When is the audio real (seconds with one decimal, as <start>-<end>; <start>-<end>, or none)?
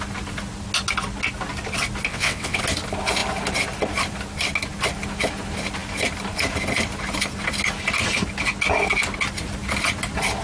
0.0-2.1; 2.6-10.4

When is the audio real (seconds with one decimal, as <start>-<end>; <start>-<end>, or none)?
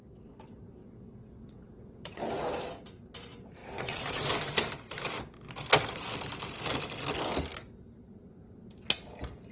0.0-0.8; 2.2-3.6; 4.2-9.5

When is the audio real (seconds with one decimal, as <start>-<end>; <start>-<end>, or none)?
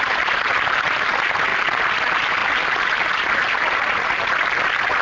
0.0-5.0